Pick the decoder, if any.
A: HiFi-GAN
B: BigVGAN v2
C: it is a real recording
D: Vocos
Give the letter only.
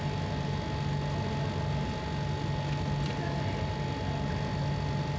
C